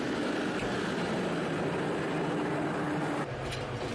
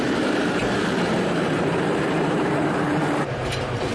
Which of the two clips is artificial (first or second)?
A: second